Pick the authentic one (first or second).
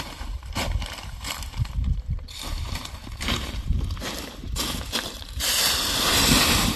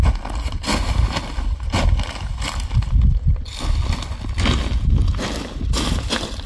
second